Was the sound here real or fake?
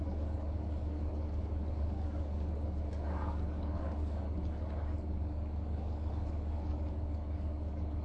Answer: fake